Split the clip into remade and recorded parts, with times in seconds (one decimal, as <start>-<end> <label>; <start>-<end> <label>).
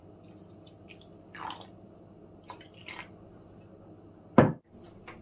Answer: 0.0-5.2 recorded